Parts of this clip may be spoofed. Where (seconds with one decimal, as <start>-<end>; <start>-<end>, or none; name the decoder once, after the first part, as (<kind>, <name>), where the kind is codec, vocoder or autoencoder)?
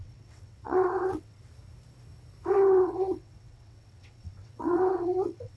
0.0-1.4 (vocoder, WaveNeXt); 2.5-5.6